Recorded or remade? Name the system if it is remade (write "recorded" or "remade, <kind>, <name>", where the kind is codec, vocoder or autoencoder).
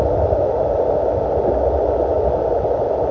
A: recorded